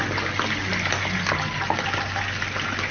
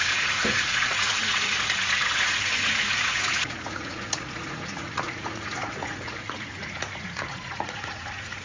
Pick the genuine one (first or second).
first